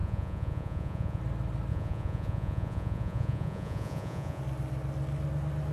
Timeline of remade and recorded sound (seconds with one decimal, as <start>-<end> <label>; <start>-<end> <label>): 0.0-1.2 remade; 1.2-1.7 recorded; 1.7-4.4 remade; 4.4-5.7 recorded